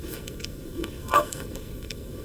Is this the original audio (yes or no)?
no